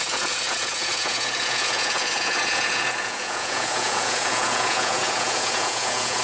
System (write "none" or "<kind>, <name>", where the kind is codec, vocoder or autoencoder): vocoder, Vocos